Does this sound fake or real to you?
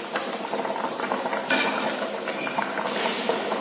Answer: real